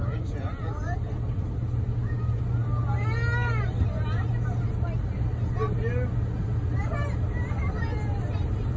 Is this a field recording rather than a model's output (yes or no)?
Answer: yes